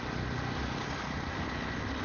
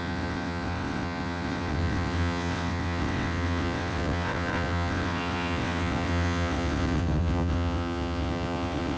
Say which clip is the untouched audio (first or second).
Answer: first